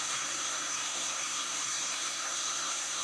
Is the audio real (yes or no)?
no